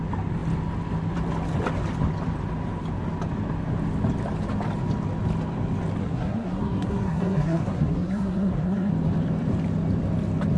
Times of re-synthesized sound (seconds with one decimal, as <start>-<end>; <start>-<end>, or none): 6.0-8.9